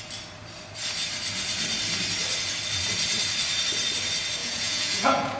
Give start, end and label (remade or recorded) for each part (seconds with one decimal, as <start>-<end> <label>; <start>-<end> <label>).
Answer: 0.0-4.4 recorded; 4.4-5.4 remade